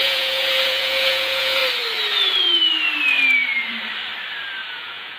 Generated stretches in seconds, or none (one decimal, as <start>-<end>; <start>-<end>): 0.0-1.6; 4.7-5.2